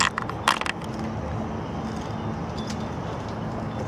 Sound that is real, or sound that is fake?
real